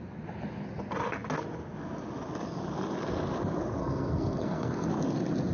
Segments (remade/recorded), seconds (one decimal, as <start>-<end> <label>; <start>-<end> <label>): 0.0-3.8 recorded; 3.8-4.9 remade; 4.9-5.5 recorded